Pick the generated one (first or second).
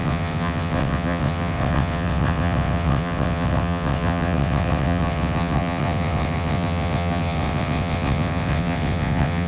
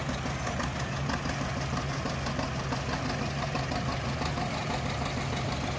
first